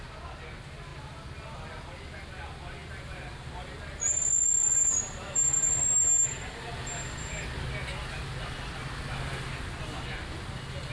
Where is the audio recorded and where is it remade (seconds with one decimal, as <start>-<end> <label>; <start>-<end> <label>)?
0.0-10.9 recorded